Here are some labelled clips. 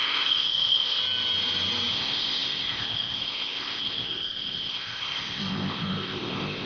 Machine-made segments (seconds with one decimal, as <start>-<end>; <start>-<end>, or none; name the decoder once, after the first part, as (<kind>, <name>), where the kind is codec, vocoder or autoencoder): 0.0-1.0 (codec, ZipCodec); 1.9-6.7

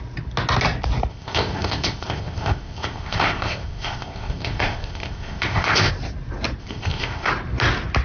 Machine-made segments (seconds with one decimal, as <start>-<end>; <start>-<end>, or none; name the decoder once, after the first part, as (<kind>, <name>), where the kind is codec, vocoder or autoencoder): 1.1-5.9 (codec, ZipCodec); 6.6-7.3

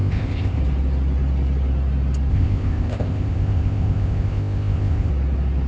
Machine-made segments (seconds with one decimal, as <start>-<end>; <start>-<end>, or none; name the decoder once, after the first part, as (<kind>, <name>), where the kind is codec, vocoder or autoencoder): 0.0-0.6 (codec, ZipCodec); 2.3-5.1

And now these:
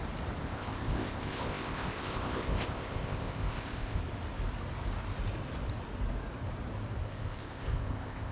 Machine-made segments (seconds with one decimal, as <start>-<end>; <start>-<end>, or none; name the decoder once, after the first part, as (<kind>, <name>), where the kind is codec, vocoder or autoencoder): 0.4-4.0 (codec, ZipCodec); 7.0-8.3

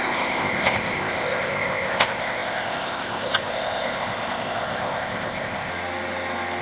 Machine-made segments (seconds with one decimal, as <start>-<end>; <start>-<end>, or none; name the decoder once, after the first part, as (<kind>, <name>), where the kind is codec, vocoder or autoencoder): 0.0-5.7 (codec, ZipCodec)